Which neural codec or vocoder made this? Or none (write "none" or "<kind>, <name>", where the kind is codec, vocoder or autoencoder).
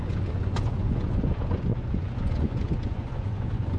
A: vocoder, Vocos